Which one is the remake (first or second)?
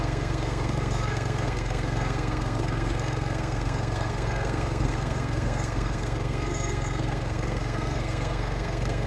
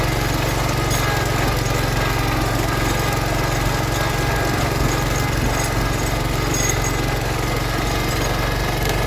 first